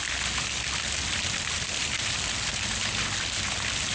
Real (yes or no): yes